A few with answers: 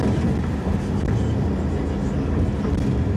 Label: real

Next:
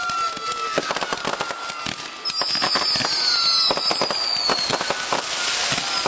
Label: real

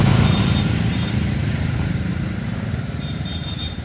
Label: fake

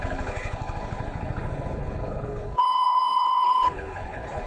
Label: fake